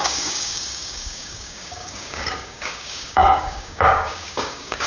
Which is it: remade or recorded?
remade